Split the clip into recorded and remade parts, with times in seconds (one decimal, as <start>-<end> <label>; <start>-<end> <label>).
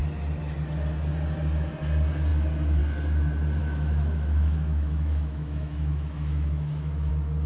0.0-3.6 recorded; 3.6-7.1 remade; 7.1-7.5 recorded